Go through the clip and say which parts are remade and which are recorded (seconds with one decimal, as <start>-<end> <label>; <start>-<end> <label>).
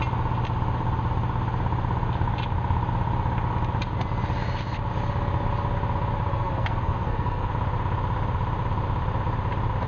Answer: 0.0-6.3 recorded; 6.3-7.5 remade; 7.5-9.9 recorded